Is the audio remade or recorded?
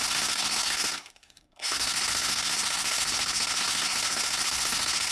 remade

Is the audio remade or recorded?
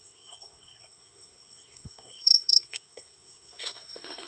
remade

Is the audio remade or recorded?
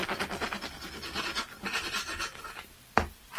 recorded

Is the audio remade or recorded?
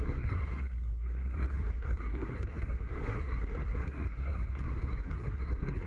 remade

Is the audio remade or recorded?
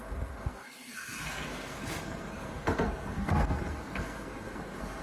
remade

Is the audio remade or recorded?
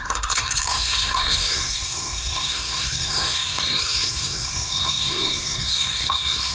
remade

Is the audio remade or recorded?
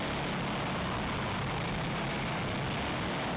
recorded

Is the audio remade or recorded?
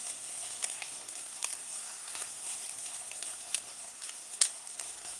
remade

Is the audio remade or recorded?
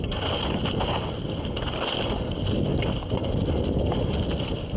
recorded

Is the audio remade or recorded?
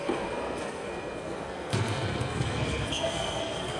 remade